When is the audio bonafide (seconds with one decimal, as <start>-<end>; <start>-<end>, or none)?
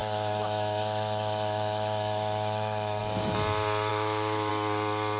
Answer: 3.0-3.9; 4.5-5.2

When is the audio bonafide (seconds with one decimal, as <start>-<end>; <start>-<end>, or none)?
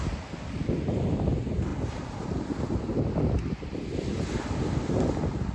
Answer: 0.0-5.5